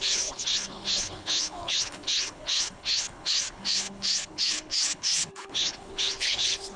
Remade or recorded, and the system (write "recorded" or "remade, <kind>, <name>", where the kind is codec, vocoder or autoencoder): remade, codec, HILCodec